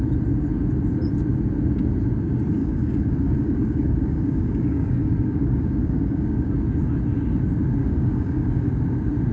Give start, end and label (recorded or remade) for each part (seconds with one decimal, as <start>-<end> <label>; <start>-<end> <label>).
0.0-2.6 recorded; 2.6-6.5 remade; 6.5-7.8 recorded; 7.8-8.7 remade; 8.7-9.3 recorded